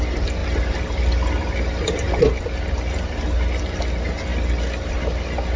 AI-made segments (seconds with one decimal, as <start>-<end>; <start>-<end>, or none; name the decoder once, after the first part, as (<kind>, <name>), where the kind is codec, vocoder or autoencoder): 0.4-3.8 (vocoder, BigVGAN v2)